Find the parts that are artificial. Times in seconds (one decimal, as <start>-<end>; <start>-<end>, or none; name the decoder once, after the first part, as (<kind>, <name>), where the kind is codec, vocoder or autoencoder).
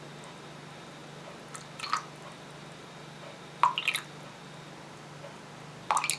none